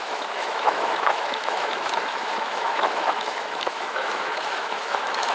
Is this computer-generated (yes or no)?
yes